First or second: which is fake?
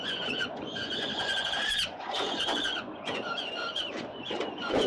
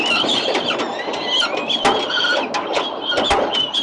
first